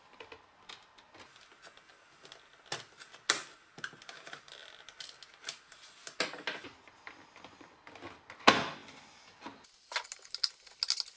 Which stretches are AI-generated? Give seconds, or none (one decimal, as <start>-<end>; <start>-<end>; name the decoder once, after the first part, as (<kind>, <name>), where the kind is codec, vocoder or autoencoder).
none